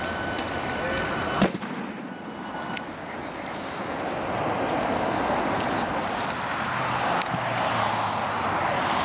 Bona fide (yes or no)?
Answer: yes